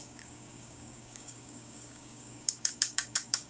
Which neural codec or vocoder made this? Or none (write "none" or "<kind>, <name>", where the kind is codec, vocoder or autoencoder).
codec, DAC